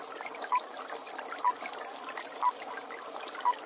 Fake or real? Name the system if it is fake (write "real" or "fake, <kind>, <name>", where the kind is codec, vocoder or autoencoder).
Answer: real